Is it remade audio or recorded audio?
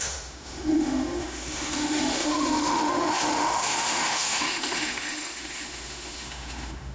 remade